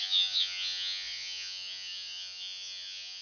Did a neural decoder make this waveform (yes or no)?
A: yes